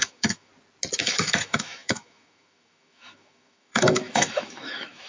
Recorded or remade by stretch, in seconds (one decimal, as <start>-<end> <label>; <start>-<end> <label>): 0.0-0.5 remade; 0.5-1.0 recorded; 1.0-5.1 remade